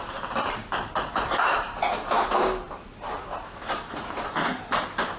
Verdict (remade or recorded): remade